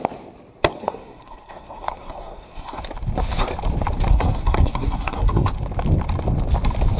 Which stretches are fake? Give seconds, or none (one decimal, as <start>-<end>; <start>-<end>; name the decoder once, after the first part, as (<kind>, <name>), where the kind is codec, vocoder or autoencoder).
0.7-2.8 (codec, SNAC); 4.1-5.5